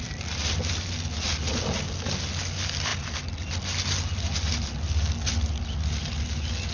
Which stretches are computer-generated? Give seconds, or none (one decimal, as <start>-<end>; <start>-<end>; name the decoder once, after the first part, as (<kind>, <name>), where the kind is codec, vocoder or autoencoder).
none